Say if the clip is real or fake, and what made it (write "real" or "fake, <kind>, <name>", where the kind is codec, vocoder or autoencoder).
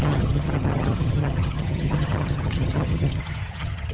fake, vocoder, HiFi-GAN